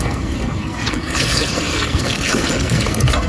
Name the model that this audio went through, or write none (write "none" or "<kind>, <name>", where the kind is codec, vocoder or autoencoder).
codec, SNAC